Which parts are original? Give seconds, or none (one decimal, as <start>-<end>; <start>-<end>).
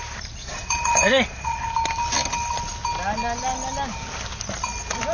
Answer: 0.0-0.4; 1.6-5.1